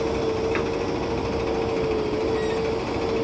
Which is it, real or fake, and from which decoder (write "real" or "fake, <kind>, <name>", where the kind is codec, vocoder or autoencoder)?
real